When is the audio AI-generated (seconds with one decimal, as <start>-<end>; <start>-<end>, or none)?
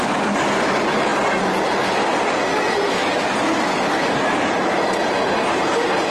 none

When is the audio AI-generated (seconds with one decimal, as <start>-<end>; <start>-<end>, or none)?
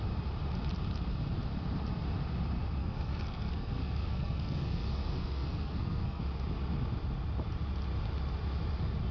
2.8-6.2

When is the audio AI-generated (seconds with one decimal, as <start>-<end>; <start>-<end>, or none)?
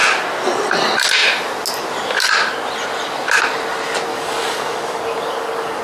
4.1-5.8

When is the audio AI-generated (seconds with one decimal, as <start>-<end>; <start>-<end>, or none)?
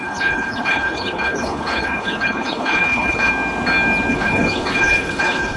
0.0-3.3; 4.1-5.6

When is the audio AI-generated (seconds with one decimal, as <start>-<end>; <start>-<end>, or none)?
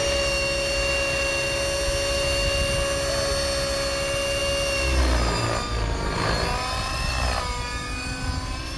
none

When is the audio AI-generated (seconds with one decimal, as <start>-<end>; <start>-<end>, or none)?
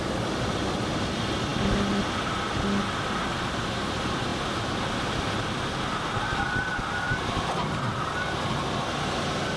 none